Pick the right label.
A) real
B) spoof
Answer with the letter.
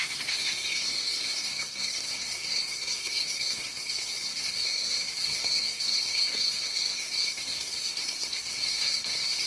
B